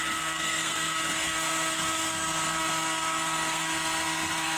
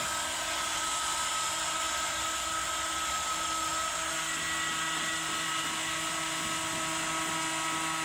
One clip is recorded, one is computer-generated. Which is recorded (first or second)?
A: second